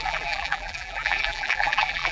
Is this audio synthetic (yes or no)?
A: yes